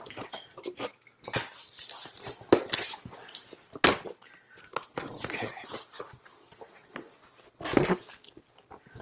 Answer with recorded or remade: recorded